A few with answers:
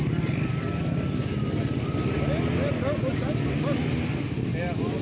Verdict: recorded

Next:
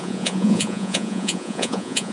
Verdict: remade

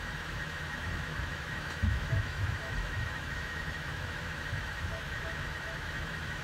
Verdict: remade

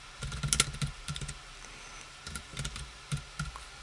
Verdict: recorded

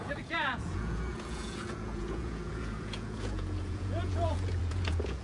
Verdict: remade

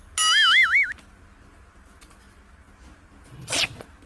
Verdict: recorded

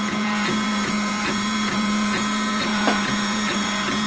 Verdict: remade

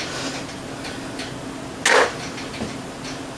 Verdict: recorded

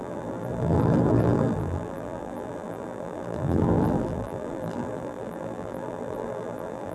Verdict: remade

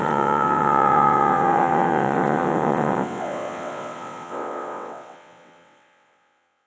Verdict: remade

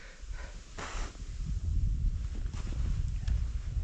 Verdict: recorded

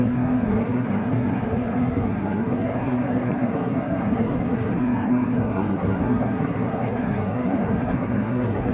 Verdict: remade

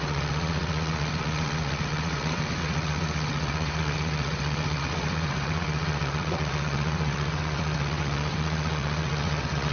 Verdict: remade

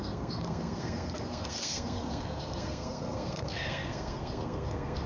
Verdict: remade